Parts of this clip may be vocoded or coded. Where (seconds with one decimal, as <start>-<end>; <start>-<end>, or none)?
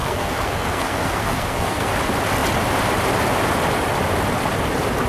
0.0-1.9